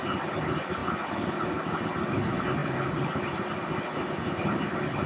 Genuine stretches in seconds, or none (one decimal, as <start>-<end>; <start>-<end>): 0.0-5.1